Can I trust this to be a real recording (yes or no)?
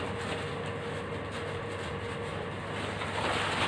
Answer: yes